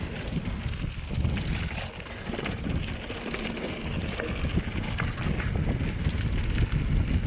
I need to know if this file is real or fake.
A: real